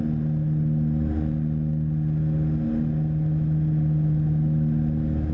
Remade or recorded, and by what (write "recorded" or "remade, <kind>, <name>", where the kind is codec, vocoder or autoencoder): recorded